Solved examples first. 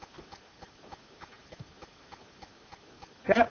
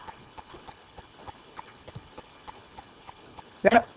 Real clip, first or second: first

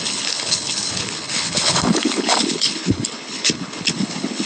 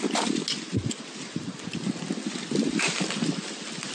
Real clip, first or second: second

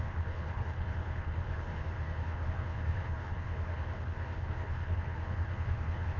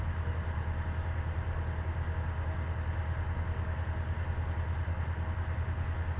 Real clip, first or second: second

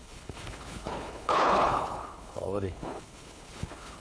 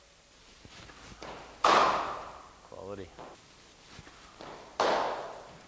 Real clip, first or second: second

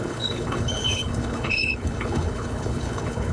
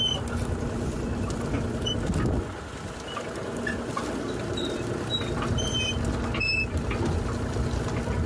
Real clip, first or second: second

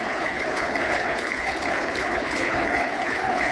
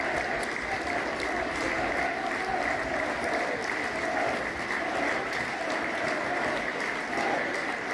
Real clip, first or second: second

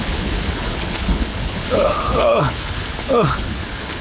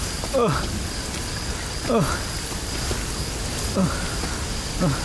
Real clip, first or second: second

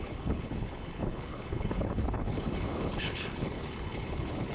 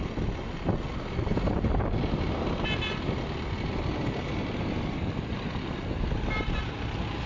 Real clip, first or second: second